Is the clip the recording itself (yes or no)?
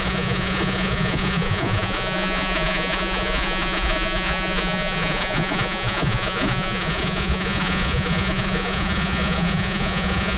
no